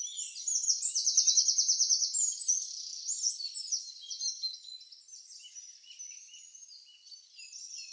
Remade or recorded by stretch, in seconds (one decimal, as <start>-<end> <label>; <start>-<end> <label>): 0.0-7.9 recorded